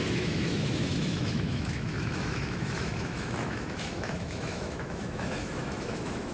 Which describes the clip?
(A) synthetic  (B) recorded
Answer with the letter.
A